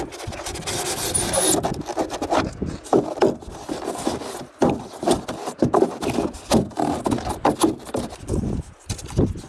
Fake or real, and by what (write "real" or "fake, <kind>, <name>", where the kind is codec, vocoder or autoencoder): real